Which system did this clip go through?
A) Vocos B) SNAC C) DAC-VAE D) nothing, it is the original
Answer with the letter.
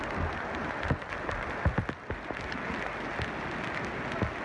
D